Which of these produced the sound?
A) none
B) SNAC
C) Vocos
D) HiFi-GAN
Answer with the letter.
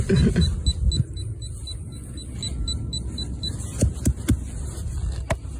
A